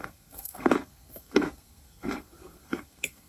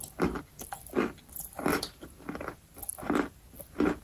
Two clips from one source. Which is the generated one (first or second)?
first